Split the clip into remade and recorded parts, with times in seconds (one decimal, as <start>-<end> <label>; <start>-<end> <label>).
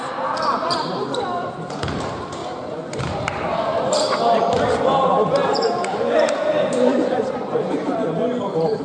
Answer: 0.0-2.4 remade; 2.4-3.0 recorded; 3.0-8.8 remade